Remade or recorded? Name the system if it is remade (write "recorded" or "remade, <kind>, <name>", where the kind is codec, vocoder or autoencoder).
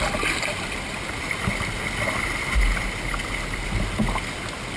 recorded